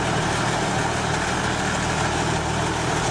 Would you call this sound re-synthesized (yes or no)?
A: no